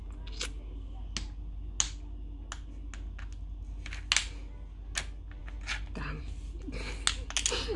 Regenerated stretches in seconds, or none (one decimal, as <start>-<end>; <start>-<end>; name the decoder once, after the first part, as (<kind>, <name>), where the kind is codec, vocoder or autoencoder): none